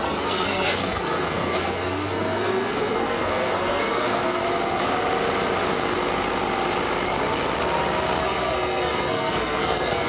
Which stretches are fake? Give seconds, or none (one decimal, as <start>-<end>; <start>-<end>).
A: 0.0-4.4; 8.2-10.1